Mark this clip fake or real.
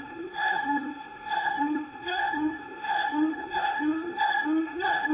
fake